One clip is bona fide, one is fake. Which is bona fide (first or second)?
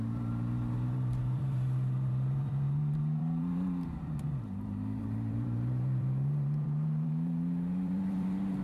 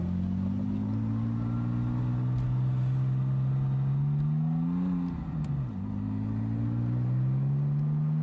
second